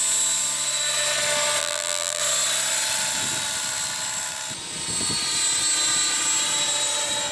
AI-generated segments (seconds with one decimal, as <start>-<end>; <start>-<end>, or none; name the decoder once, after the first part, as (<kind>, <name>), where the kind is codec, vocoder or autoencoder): 1.6-2.2 (vocoder, BigVGAN v2)